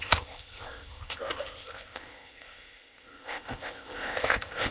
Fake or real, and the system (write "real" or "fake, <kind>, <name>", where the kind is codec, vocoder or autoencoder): fake, codec, ZipCodec